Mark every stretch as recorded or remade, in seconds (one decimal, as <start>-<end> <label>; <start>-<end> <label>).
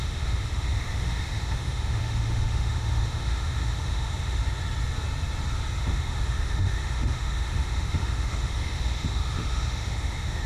0.0-4.4 remade; 4.4-5.8 recorded; 5.8-10.5 remade